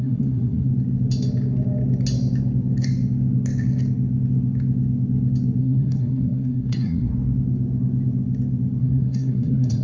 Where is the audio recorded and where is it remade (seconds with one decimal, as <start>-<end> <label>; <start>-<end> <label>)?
0.0-0.7 remade; 0.7-5.6 recorded; 5.6-7.1 remade; 7.1-8.8 recorded; 8.8-9.8 remade